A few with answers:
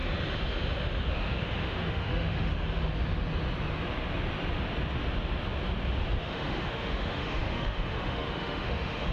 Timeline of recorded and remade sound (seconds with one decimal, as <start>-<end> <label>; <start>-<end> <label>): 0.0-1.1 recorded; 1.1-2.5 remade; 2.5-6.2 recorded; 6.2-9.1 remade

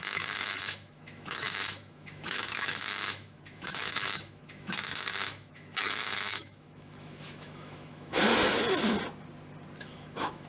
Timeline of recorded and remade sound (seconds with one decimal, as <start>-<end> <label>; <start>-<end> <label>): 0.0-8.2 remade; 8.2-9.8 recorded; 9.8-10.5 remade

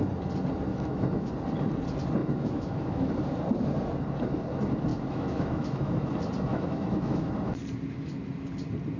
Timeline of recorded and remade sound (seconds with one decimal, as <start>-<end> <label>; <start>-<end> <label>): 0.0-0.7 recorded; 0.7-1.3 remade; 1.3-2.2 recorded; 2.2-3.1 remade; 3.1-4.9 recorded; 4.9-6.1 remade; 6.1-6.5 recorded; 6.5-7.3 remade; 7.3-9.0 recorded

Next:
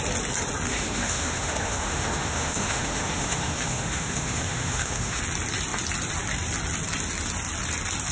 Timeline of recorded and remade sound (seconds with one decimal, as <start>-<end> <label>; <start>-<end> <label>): 0.0-0.7 recorded; 0.7-5.2 remade; 5.2-8.1 recorded

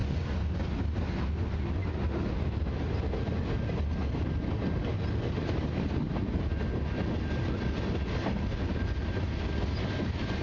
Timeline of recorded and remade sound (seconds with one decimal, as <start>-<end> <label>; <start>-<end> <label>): 0.0-10.4 recorded